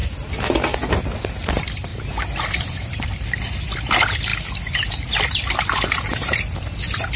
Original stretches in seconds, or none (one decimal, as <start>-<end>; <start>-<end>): 4.3-6.0